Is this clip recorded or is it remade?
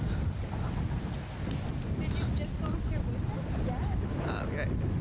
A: recorded